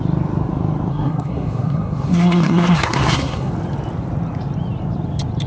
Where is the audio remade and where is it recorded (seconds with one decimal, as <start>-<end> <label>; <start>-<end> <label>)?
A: 0.0-0.9 recorded; 0.9-3.5 remade; 3.5-5.5 recorded